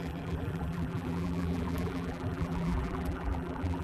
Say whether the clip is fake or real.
fake